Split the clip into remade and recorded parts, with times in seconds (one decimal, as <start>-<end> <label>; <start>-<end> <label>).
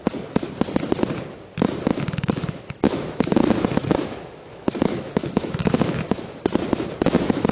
0.0-1.9 recorded; 1.9-6.4 remade; 6.4-7.5 recorded